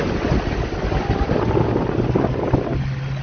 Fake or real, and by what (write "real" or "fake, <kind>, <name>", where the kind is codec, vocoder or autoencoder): real